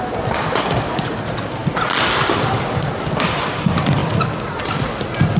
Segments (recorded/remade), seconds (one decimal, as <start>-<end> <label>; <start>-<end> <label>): 0.0-5.4 recorded